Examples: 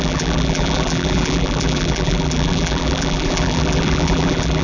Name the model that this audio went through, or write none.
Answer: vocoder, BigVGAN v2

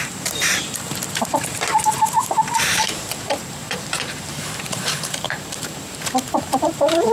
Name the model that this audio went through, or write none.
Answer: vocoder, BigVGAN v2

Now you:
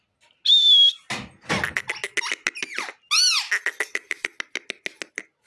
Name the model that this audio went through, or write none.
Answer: none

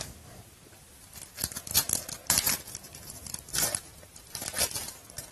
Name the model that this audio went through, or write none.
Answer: vocoder, BigVGAN v2